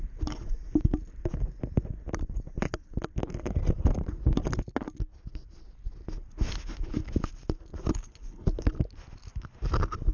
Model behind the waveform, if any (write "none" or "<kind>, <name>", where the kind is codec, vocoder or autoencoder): none